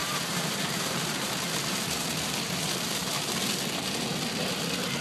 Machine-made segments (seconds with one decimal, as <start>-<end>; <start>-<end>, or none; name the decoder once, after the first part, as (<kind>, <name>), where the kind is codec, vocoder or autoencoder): 0.0-1.3 (vocoder, BigVGAN v2)